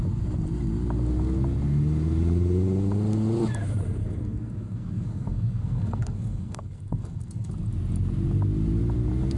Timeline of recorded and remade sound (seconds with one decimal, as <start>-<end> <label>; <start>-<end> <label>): 0.0-4.0 recorded; 4.0-7.5 remade; 7.5-9.4 recorded